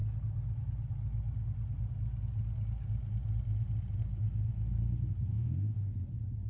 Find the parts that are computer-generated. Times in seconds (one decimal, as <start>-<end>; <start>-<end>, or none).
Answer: 5.3-5.8